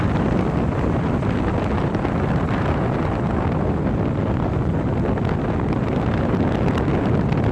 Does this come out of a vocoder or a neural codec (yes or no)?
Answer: no